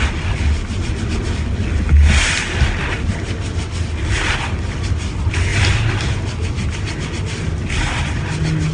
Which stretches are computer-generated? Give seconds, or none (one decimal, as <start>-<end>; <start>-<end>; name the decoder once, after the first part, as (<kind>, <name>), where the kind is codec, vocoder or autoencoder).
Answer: none